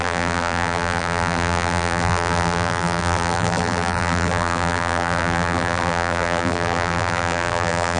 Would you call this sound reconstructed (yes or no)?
yes